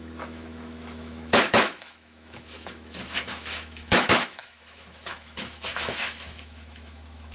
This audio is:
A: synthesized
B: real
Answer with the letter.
A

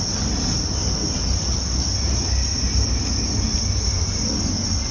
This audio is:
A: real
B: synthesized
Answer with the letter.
A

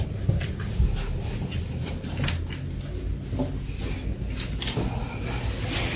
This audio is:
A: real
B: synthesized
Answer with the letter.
A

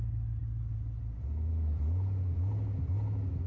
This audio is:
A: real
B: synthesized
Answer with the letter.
A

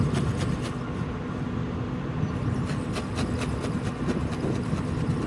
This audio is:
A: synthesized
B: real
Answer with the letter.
B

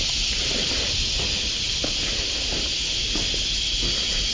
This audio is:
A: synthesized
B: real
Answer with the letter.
B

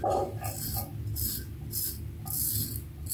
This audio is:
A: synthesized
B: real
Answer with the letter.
B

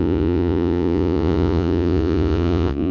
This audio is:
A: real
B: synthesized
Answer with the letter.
B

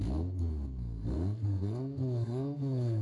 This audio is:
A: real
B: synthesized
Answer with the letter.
B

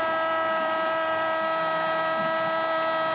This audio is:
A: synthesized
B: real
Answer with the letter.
B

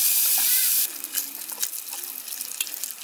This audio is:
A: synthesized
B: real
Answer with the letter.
B